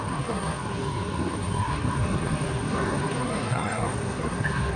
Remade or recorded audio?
remade